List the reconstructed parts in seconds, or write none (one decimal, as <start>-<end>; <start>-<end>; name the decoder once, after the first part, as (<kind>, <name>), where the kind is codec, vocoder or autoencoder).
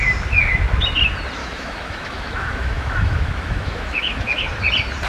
1.4-4.5 (autoencoder, DAC-VAE)